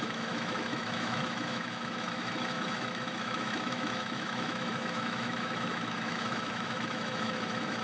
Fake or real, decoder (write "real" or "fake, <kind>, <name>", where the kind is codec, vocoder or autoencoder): fake, autoencoder, DAC-VAE